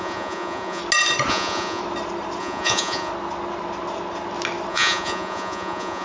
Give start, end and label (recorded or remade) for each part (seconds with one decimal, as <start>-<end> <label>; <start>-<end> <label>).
0.0-0.8 remade; 0.8-1.3 recorded; 1.3-1.8 remade; 1.8-2.4 recorded; 2.4-3.1 remade; 3.1-4.7 recorded; 4.7-6.0 remade